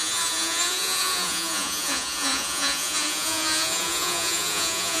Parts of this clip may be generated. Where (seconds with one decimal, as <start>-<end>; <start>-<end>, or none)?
0.0-5.0

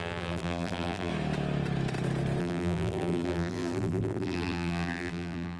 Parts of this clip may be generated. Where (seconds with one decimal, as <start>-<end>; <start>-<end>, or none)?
0.0-1.1; 2.4-5.6